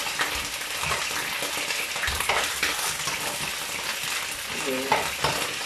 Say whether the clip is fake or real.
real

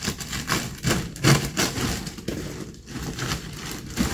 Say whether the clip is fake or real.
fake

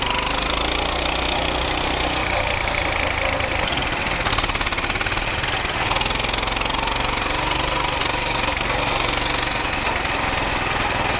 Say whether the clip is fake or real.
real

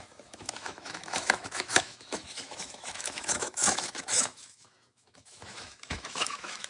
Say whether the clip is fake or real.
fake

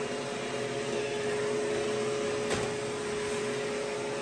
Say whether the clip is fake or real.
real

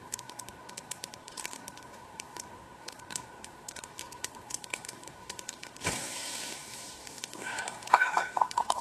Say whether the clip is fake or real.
fake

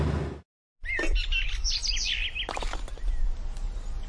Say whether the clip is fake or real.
real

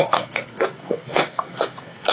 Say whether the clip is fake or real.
fake